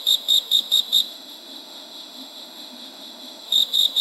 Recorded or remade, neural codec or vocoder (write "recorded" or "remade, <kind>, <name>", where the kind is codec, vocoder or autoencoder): remade, autoencoder, DAC-VAE